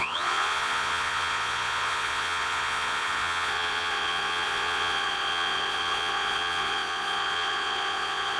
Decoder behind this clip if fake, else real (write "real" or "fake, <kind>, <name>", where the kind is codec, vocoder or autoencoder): fake, vocoder, Vocos